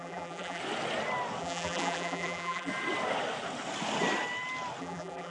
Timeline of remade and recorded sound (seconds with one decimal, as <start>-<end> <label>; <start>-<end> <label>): 0.0-0.6 remade; 0.6-1.4 recorded; 1.4-2.7 remade; 2.7-4.8 recorded; 4.8-5.3 remade